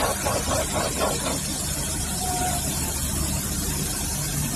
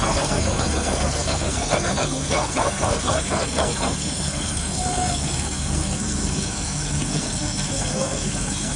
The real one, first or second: first